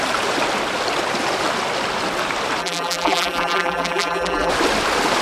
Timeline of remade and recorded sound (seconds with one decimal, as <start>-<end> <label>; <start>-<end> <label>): 0.0-2.6 recorded; 2.6-4.5 remade; 4.5-5.2 recorded